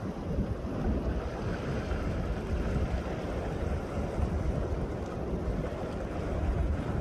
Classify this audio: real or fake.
fake